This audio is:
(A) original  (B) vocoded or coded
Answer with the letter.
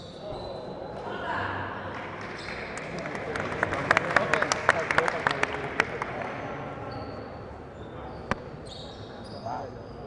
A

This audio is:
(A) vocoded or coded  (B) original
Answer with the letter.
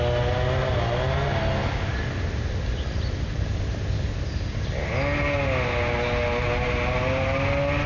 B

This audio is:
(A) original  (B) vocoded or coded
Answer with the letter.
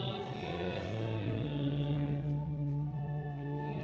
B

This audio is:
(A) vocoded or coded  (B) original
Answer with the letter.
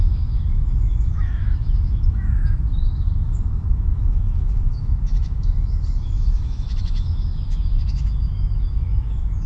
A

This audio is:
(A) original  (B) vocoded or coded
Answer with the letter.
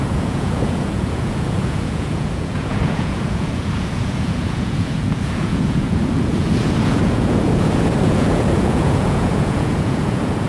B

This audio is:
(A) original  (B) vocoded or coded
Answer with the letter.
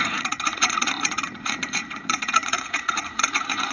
B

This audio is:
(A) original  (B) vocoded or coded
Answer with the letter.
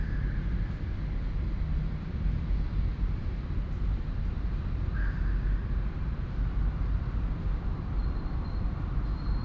B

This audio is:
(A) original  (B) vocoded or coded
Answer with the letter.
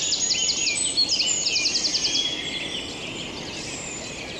A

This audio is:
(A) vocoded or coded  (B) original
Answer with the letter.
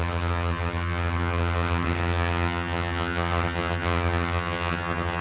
A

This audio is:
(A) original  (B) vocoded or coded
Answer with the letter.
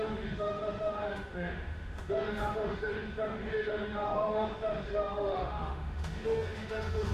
B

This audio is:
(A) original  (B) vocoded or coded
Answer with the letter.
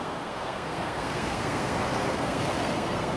B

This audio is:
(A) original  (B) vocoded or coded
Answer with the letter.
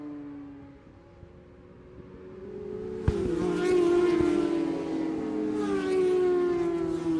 A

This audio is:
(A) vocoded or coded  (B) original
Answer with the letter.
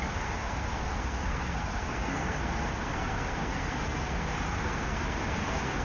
A